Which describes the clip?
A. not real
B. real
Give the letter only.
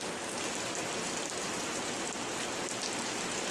B